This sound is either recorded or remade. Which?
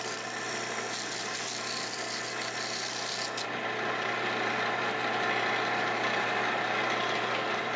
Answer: recorded